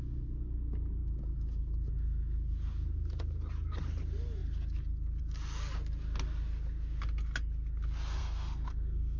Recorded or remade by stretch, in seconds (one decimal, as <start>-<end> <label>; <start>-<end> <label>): 0.0-8.2 recorded; 8.2-9.2 remade